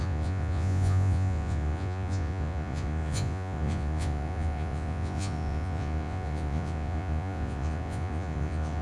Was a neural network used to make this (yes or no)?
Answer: yes